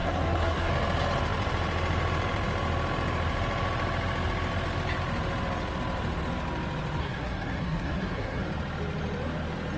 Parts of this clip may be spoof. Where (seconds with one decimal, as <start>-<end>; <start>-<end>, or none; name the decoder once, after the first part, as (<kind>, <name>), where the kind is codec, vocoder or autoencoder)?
0.0-0.7 (codec, SNAC); 7.0-8.4